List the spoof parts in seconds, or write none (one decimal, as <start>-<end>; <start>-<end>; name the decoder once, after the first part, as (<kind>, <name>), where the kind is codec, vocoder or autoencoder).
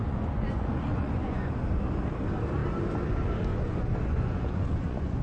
0.0-1.5 (vocoder, Vocos); 3.5-5.2